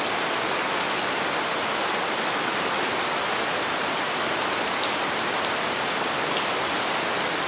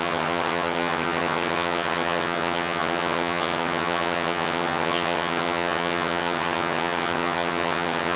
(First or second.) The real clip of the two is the first